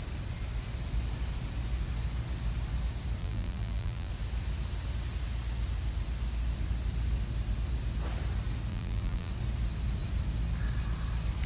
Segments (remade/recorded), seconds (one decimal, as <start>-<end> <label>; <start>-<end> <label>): 0.0-3.2 recorded; 3.2-4.1 remade; 4.1-8.7 recorded; 8.7-9.3 remade; 9.3-11.5 recorded